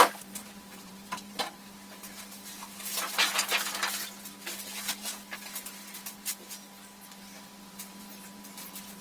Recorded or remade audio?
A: recorded